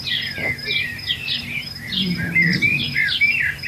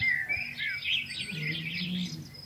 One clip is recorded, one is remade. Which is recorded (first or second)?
second